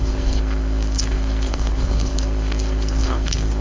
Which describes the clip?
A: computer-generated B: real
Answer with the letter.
A